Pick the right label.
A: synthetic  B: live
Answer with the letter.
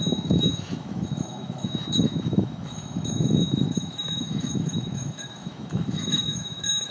A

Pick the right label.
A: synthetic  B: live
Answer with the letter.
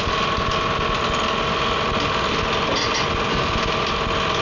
B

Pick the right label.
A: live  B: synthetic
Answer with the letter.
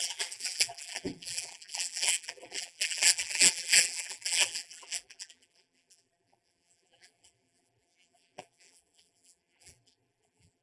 B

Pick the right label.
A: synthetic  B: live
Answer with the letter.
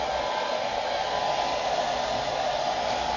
B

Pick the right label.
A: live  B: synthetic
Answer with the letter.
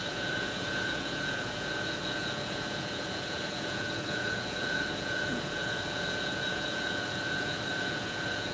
B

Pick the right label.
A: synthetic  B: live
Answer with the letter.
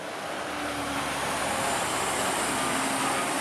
B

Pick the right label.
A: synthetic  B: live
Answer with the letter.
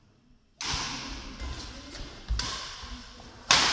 B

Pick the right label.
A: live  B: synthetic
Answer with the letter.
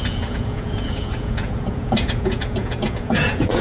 B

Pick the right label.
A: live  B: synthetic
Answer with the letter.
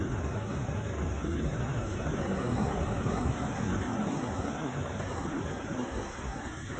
B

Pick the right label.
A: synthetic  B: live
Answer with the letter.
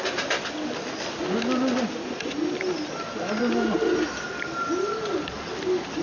B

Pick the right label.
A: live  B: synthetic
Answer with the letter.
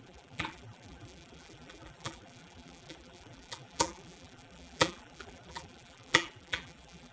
B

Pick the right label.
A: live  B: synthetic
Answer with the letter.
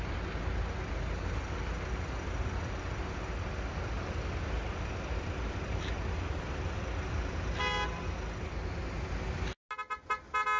A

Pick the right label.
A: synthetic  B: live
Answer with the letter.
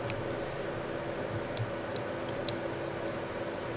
B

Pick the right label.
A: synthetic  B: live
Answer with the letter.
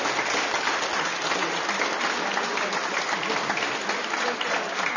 B